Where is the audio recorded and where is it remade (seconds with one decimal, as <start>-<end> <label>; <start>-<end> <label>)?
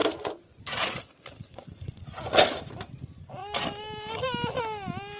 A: 0.0-0.7 remade; 0.7-1.5 recorded; 1.5-2.3 remade; 2.3-5.2 recorded